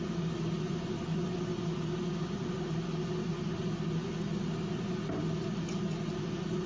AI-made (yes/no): no